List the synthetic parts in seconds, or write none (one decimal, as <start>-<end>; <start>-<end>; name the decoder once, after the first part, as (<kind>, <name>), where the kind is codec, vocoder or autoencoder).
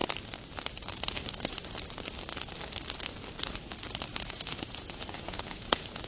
4.1-6.1 (vocoder, Vocos)